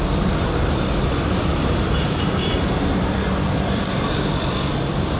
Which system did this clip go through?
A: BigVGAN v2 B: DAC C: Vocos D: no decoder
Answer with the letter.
A